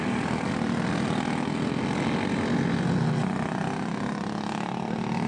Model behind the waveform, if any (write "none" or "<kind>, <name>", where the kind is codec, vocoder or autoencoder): none